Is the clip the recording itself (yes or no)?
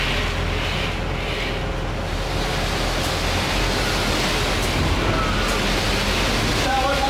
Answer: yes